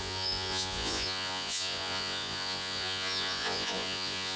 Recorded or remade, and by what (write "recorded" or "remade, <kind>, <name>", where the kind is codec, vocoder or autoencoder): remade, vocoder, Vocos